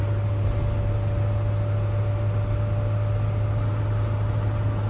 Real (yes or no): yes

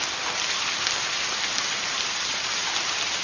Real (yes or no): yes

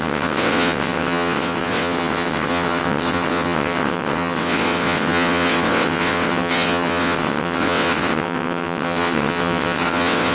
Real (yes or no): no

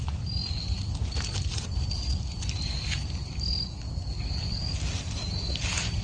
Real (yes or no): yes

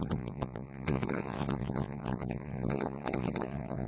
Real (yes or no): no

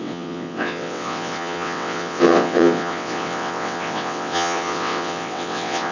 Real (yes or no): no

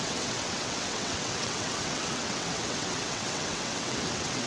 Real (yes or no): no